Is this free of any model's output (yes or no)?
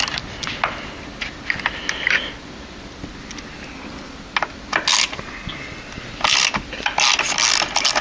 yes